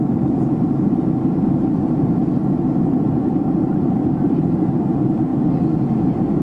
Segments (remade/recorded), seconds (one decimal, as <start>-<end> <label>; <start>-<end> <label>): 0.0-2.4 remade; 2.4-3.7 recorded; 3.7-5.3 remade; 5.3-6.4 recorded